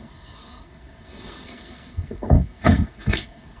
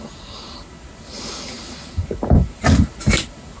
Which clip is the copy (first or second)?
first